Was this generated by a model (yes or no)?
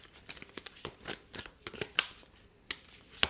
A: no